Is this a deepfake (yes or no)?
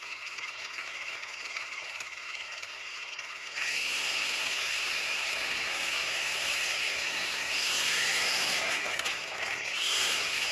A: yes